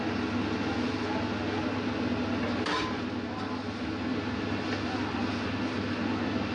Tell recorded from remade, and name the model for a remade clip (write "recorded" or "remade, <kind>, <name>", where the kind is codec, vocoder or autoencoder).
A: recorded